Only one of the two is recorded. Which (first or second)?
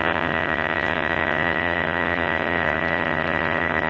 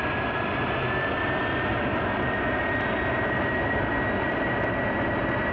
second